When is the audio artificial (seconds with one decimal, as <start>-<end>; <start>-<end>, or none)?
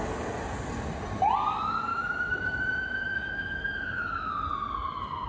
1.9-4.3